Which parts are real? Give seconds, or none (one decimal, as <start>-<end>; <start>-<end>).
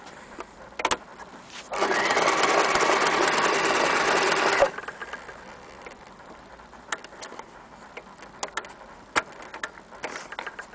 0.0-10.7